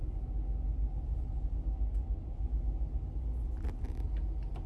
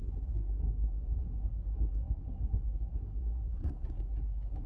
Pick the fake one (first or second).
second